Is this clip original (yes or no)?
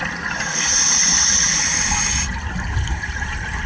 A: yes